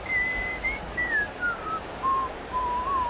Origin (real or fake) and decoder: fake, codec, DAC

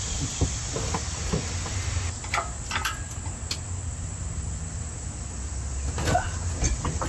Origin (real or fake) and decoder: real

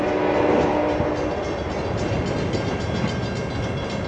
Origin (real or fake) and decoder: real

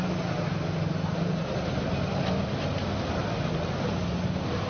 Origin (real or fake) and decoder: real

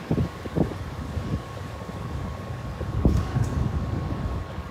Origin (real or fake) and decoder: fake, codec, DAC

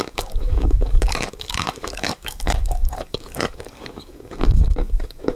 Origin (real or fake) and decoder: fake, codec, DAC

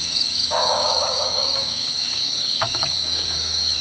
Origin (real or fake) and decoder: fake, codec, DAC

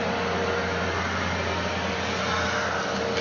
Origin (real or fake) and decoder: real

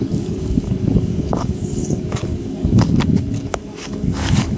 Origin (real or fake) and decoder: fake, codec, DAC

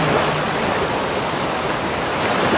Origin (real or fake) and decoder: real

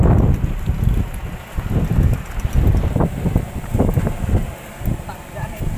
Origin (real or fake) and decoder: real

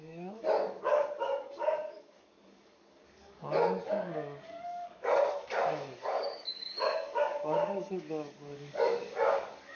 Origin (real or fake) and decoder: fake, codec, DAC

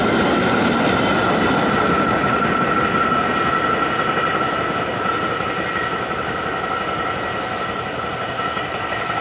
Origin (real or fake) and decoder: real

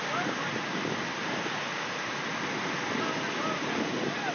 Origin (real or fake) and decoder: real